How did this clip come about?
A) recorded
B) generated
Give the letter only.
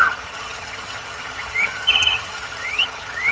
B